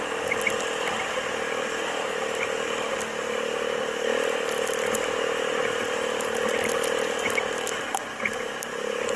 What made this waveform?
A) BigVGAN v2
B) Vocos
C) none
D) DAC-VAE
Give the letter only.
C